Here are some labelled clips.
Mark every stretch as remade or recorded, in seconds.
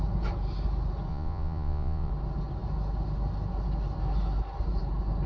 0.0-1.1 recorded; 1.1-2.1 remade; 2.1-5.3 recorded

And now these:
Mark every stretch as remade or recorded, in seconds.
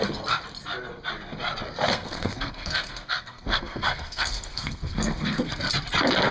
0.0-1.9 recorded; 1.9-5.7 remade; 5.7-6.3 recorded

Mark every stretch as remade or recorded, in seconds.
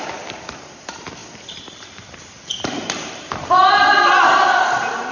0.0-5.1 remade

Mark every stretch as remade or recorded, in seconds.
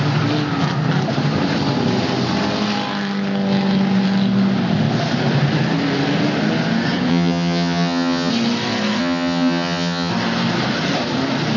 0.0-7.1 recorded; 7.1-8.3 remade; 8.3-9.0 recorded; 9.0-10.1 remade; 10.1-11.6 recorded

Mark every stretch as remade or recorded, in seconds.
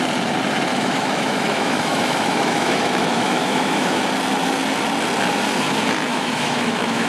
0.0-0.7 recorded; 0.7-4.0 remade; 4.0-6.1 recorded; 6.1-7.1 remade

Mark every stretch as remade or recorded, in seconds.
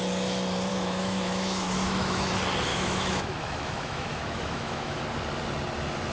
0.0-0.7 recorded; 0.7-2.3 remade; 2.3-2.7 recorded; 2.7-5.0 remade; 5.0-6.1 recorded